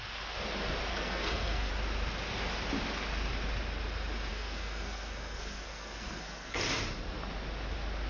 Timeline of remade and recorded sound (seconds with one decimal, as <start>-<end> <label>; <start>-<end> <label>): 0.0-0.9 recorded; 0.9-1.7 remade; 1.7-4.3 recorded; 4.3-6.6 remade; 6.6-8.1 recorded